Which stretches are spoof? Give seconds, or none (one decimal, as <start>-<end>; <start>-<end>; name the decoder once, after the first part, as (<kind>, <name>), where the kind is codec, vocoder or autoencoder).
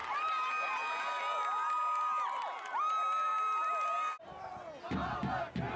none